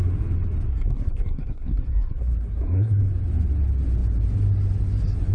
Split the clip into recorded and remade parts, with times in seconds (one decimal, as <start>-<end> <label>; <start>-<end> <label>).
0.0-0.7 recorded; 0.7-3.0 remade; 3.0-5.3 recorded